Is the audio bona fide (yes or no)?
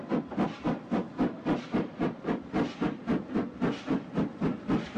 yes